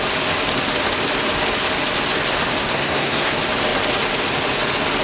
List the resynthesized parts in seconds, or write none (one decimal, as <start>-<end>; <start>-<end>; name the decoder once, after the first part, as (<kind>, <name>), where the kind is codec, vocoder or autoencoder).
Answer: 2.6-3.3 (codec, SNAC)